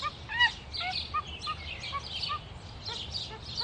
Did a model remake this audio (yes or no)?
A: no